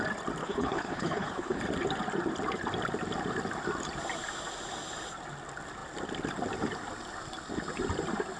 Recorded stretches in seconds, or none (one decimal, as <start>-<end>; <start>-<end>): 0.0-0.4; 1.6-8.4